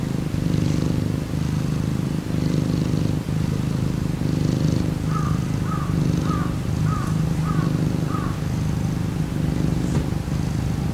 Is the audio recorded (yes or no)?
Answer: yes